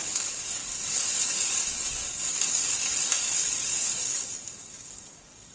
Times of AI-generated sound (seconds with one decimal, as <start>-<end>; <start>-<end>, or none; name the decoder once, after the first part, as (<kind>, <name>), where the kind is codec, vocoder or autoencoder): 0.0-5.5 (codec, DAC)